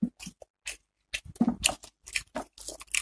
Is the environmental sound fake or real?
real